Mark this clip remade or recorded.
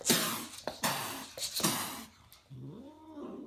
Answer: recorded